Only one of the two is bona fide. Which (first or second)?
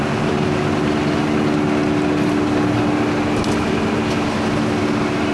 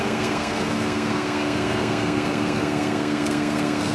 first